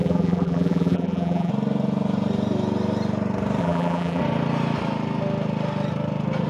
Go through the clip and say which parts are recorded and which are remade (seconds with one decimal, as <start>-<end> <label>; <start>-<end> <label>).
0.0-1.5 remade; 1.5-3.6 recorded; 3.6-4.2 remade; 4.2-6.5 recorded